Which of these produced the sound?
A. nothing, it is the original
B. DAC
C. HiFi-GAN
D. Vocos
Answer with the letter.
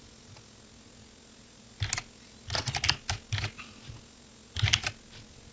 A